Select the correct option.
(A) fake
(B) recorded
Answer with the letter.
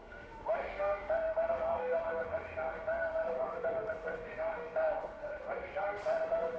A